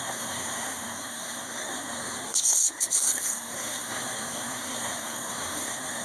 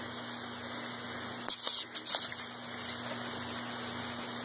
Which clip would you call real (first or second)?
second